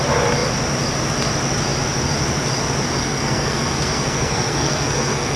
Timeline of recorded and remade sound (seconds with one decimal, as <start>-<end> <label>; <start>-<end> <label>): 0.0-3.0 recorded; 3.0-5.4 remade